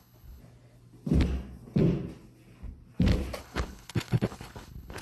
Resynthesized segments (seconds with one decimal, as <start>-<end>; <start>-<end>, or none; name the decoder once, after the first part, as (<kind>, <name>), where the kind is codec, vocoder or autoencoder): 0.0-0.4 (codec, HILCodec); 3.4-5.0